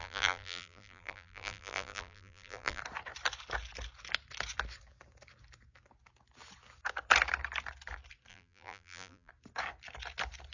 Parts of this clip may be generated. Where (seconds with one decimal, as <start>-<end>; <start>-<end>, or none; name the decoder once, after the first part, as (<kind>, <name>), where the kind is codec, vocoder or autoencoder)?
0.0-2.8 (vocoder, BigVGAN v2); 8.3-9.3